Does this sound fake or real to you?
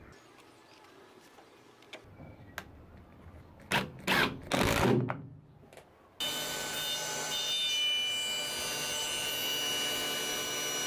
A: real